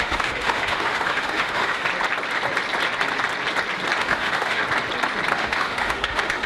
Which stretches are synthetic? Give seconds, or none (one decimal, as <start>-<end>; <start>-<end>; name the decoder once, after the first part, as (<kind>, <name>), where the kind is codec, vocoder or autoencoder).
0.0-1.9 (autoencoder, DAC-VAE); 4.0-4.6; 5.3-6.5